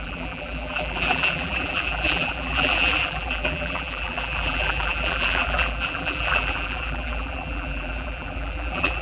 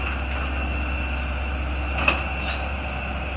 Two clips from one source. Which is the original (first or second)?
second